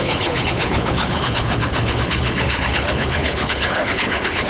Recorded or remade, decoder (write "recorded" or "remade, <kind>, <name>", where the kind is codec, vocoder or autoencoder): remade, codec, HILCodec